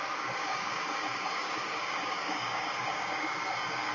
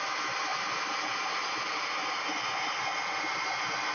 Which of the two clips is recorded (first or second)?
second